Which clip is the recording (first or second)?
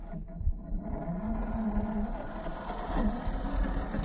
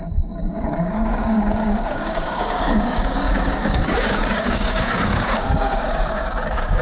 first